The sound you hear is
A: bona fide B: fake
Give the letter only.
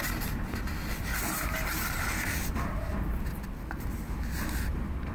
A